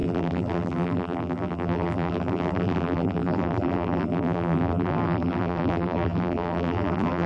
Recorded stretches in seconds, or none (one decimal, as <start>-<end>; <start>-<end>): none